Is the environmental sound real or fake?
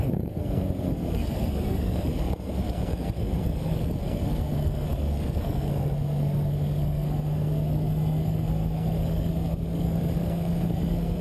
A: fake